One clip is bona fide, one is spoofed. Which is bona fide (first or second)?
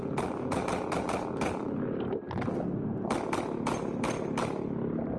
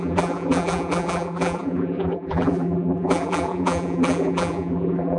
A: first